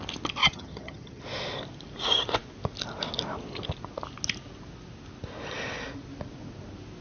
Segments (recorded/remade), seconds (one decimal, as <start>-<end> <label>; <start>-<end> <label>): 0.0-0.4 recorded; 0.4-1.2 remade; 1.2-7.0 recorded